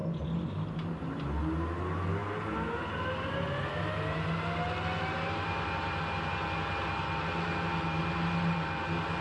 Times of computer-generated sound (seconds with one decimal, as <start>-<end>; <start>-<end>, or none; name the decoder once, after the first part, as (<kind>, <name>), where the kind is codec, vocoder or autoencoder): none